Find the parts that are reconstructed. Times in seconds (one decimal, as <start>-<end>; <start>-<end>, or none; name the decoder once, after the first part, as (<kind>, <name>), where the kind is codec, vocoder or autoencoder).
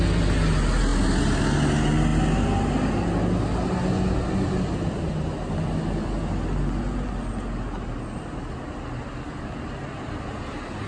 none